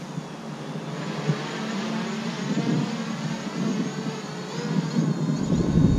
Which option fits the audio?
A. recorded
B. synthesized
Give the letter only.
A